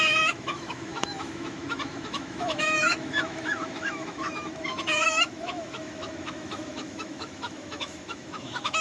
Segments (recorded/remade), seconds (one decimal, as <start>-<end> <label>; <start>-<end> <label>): 0.0-8.8 remade

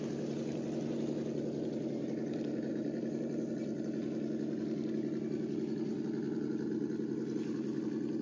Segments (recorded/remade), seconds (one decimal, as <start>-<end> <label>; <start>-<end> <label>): 0.0-8.2 recorded